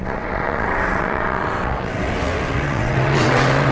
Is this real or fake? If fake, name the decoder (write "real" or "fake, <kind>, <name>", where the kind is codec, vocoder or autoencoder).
fake, vocoder, WaveNeXt